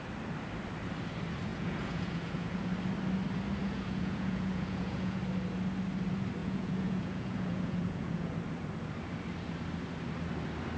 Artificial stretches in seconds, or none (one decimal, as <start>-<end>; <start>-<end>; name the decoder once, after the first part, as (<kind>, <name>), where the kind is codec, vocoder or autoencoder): 1.5-2.7 (vocoder, Vocos); 3.6-5.2; 6.4-8.3